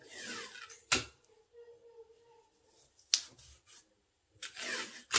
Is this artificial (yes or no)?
no